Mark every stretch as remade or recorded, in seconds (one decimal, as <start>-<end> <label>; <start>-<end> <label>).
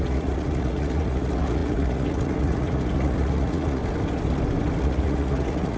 0.0-3.8 remade; 3.8-4.8 recorded; 4.8-5.8 remade